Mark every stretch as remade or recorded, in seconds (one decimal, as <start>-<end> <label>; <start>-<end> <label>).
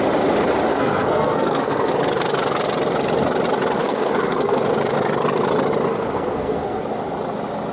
0.0-0.7 recorded; 0.7-1.9 remade; 1.9-3.8 recorded; 3.8-4.6 remade; 4.6-5.9 recorded; 5.9-6.8 remade; 6.8-7.7 recorded